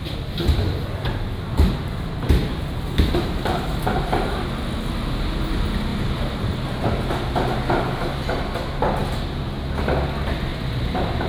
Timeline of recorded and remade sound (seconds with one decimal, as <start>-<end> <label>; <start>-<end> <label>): 0.0-2.4 recorded; 2.4-4.4 remade; 4.4-5.9 recorded; 5.9-7.1 remade; 7.1-10.5 recorded; 10.5-11.3 remade